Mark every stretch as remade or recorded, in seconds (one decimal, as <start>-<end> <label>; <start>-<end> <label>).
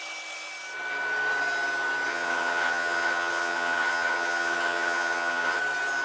0.0-2.1 recorded; 2.1-5.6 remade; 5.6-6.0 recorded